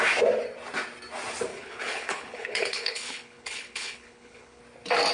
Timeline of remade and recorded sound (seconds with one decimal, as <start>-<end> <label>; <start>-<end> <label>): 0.0-1.5 recorded; 1.5-4.6 remade; 4.6-5.1 recorded